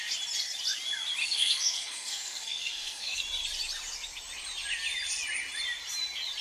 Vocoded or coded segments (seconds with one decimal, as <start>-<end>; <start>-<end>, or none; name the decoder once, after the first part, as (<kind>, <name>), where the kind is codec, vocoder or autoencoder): 1.2-3.2 (codec, SNAC)